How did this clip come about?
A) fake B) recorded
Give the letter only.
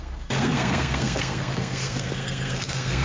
A